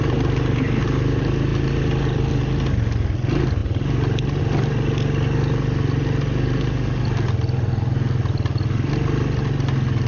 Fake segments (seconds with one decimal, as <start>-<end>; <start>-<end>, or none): none